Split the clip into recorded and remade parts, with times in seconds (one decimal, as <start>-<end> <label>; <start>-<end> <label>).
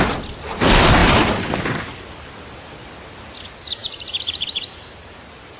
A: 0.0-3.8 recorded; 3.8-4.9 remade; 4.9-5.6 recorded